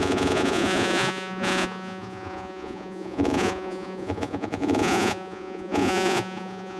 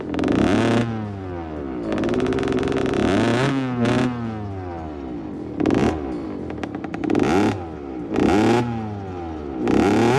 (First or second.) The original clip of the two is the second